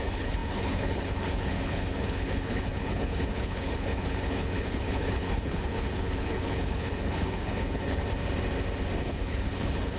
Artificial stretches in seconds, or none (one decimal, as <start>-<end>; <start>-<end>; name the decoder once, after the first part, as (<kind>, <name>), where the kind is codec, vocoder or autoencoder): 0.0-8.0 (codec, HILCodec); 9.0-10.0